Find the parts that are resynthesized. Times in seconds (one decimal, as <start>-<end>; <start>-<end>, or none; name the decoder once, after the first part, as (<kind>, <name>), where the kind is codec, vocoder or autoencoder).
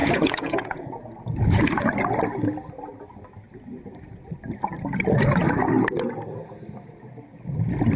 0.0-0.8 (vocoder, Vocos)